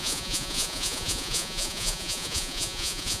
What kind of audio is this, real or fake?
fake